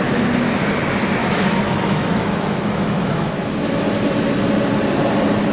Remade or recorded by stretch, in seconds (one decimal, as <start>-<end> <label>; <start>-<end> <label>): 0.0-1.2 recorded; 1.2-4.5 remade; 4.5-5.5 recorded